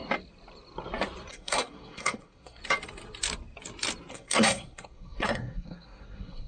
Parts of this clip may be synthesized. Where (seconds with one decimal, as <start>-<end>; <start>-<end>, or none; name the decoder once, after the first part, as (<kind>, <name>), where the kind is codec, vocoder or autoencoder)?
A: 1.3-2.6 (codec, SNAC); 4.1-6.5

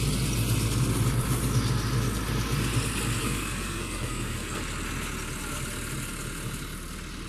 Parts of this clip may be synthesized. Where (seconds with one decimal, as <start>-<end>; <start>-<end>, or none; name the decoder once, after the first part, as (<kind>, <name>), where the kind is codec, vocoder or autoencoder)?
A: 3.2-4.6 (codec, SNAC)

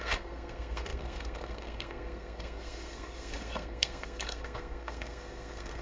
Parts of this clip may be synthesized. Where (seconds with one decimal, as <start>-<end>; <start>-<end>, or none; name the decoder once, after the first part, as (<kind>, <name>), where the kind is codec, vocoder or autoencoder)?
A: 0.0-5.8 (codec, SNAC)

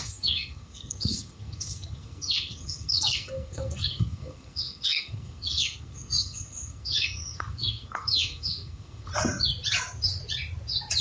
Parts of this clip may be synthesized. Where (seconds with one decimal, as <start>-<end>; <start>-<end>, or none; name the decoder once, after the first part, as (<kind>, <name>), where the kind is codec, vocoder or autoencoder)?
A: 0.0-9.1 (codec, SNAC)